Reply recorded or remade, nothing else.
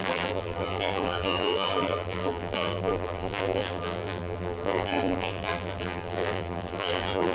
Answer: remade